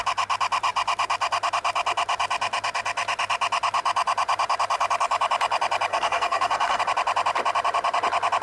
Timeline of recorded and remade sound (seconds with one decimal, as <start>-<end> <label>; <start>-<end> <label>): 0.0-5.9 recorded; 5.9-6.8 remade; 6.8-8.4 recorded